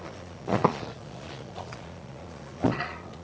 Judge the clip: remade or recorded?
remade